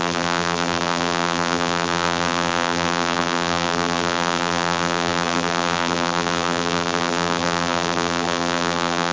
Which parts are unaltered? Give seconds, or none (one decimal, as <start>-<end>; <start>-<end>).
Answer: none